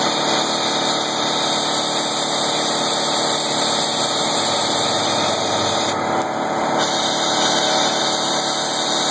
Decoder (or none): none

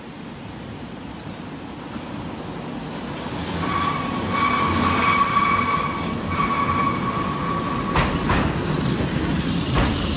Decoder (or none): none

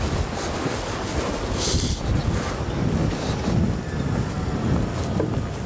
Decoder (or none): none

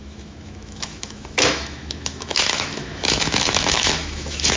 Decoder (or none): autoencoder, DAC-VAE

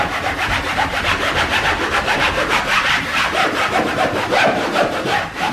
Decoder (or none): vocoder, BigVGAN v2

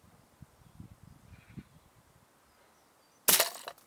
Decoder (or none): none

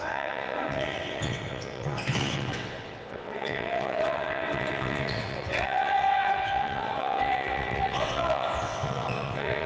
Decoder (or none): vocoder, WaveNeXt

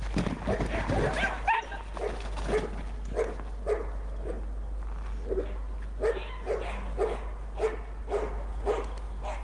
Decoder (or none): none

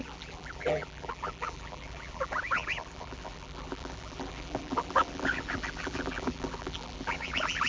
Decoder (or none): vocoder, BigVGAN v2